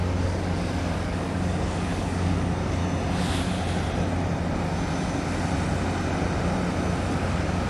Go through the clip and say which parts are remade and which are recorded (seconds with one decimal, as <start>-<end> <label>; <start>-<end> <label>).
0.0-2.8 remade; 2.8-7.1 recorded; 7.1-7.7 remade